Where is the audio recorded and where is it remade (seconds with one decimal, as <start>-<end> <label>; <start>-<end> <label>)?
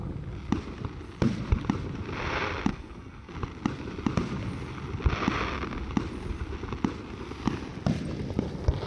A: 0.0-2.7 recorded; 2.7-3.3 remade; 3.3-8.9 recorded